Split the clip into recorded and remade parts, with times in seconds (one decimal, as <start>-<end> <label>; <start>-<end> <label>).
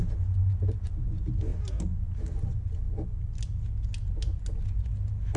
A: 0.0-5.4 recorded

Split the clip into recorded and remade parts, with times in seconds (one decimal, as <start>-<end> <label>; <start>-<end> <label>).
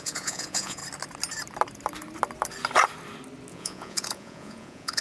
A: 0.0-0.8 remade; 0.8-3.5 recorded; 3.5-5.0 remade